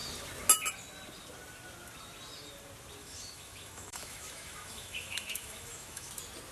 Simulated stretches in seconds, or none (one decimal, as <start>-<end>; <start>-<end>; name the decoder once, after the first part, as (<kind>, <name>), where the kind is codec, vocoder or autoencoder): 3.0-6.1 (autoencoder, DAC-VAE)